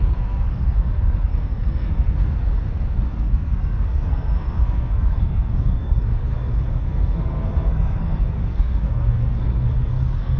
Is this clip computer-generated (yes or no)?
yes